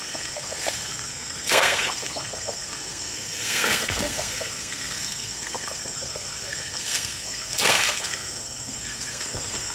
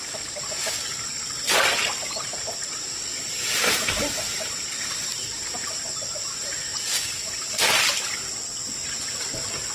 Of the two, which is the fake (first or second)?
first